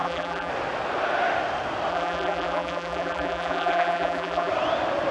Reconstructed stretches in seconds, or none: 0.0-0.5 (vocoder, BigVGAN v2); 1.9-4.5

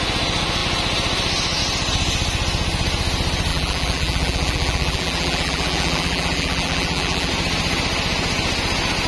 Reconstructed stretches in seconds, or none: 3.5-7.3 (vocoder, BigVGAN v2)

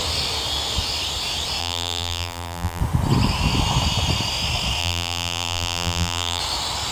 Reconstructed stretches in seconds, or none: 1.6-2.8 (vocoder, BigVGAN v2); 4.8-6.4

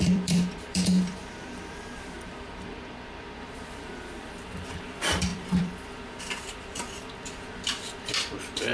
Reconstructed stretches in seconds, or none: 0.0-8.7 (vocoder, BigVGAN v2)

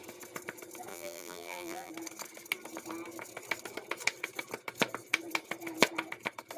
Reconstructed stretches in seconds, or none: 0.9-1.9 (vocoder, BigVGAN v2)

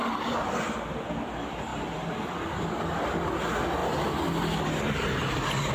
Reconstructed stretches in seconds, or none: 0.0-0.6 (vocoder, BigVGAN v2); 1.7-3.0; 3.8-5.7

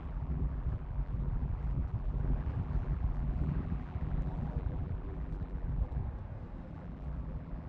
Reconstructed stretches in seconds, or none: 0.0-6.0 (vocoder, BigVGAN v2); 6.7-7.7

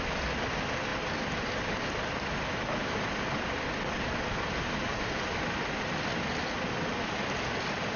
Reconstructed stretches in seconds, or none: none